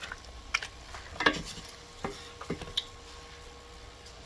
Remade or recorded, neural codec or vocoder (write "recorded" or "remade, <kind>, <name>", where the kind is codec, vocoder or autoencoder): recorded